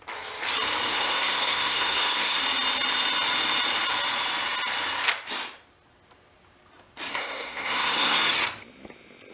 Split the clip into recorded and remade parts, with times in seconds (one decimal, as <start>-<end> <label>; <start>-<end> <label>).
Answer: 0.0-0.9 recorded; 0.9-2.4 remade; 2.4-7.1 recorded; 7.1-8.2 remade; 8.2-9.3 recorded